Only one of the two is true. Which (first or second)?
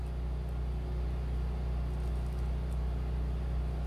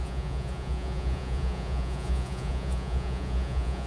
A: first